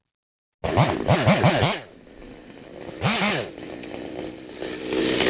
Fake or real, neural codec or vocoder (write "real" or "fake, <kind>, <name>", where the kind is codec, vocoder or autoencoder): real